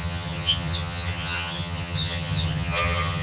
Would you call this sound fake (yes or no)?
yes